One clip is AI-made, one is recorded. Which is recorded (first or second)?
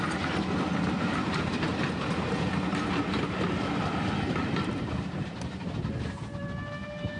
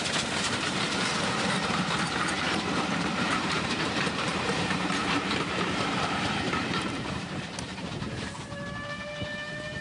first